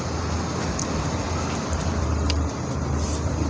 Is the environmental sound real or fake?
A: real